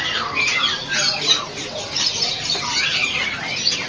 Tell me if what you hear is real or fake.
fake